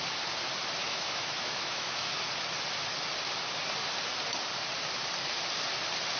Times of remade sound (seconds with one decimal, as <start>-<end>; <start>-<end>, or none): 0.8-2.2